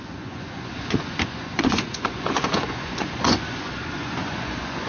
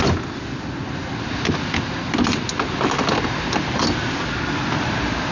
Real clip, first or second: second